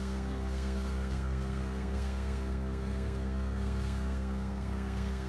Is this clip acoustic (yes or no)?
no